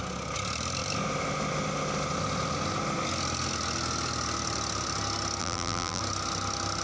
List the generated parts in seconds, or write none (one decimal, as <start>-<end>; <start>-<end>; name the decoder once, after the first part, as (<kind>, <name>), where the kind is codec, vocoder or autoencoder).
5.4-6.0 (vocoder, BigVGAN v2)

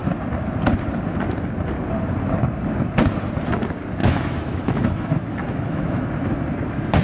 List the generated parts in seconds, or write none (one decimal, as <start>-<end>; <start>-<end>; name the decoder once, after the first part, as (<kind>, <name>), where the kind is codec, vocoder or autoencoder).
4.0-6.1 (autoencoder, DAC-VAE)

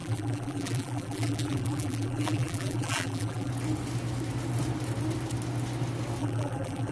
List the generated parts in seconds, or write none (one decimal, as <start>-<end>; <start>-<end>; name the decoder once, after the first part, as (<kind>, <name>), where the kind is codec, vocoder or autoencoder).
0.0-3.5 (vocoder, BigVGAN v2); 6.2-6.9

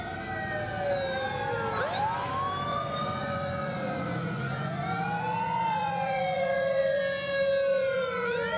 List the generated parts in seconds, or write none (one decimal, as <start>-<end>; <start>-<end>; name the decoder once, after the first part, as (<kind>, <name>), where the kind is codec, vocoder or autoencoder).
2.7-7.0 (vocoder, Vocos); 7.7-8.6

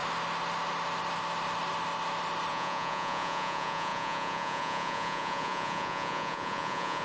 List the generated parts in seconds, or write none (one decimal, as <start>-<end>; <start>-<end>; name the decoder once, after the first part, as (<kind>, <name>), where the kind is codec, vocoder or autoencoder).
2.5-7.0 (vocoder, Vocos)

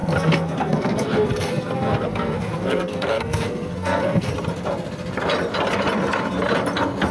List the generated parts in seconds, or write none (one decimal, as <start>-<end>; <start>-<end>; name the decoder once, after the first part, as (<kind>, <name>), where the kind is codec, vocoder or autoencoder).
0.0-4.3 (codec, SNAC)

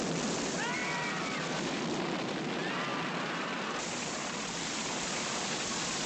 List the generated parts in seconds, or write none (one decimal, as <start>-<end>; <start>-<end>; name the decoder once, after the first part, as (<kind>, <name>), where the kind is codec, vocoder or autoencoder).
0.8-2.4 (vocoder, BigVGAN v2); 2.9-5.5

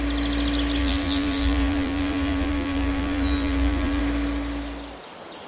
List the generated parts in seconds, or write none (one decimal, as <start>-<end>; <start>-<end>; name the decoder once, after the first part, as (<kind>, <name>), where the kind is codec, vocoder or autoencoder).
0.8-4.0 (vocoder, BigVGAN v2)